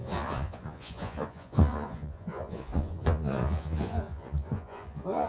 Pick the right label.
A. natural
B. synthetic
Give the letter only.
B